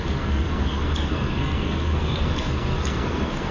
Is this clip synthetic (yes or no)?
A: yes